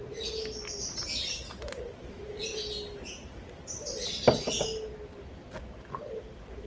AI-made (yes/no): no